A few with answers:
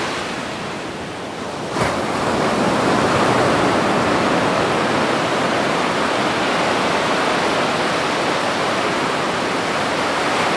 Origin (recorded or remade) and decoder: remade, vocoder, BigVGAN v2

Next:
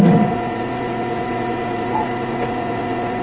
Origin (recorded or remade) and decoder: remade, vocoder, Vocos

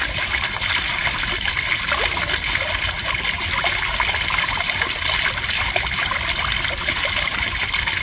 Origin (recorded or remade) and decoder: recorded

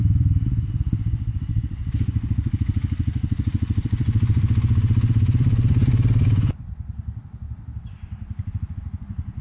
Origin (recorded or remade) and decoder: remade, vocoder, BigVGAN v2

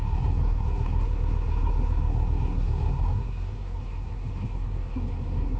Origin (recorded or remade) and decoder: remade, codec, SNAC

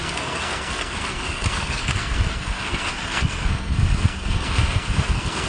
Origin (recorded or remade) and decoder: remade, codec, SNAC